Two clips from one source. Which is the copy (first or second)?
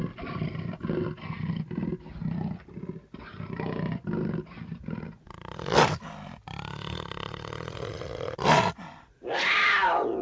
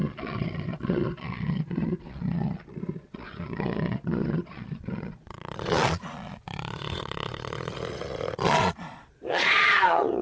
second